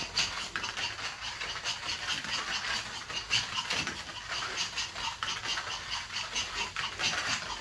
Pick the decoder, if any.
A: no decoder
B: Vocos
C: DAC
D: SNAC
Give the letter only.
A